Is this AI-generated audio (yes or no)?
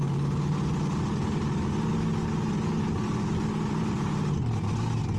no